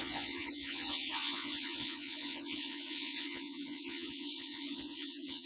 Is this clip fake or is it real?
fake